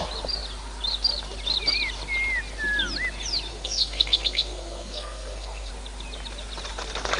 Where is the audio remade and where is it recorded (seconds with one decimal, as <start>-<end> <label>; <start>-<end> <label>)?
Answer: 0.0-3.5 recorded; 3.5-5.7 remade; 5.7-7.2 recorded